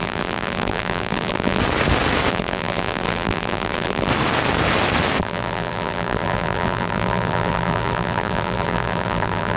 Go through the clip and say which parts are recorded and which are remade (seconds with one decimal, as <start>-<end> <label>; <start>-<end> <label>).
0.0-1.6 remade; 1.6-2.3 recorded; 2.3-4.1 remade; 4.1-5.2 recorded; 5.2-9.6 remade